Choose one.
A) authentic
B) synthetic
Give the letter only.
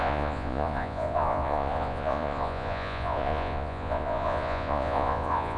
B